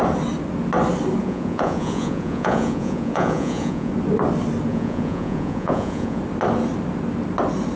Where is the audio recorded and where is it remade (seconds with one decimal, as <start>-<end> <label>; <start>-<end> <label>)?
0.0-1.2 recorded; 1.2-3.9 remade; 3.9-4.7 recorded; 4.7-6.2 remade; 6.2-7.8 recorded